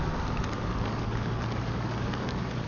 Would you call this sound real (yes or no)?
no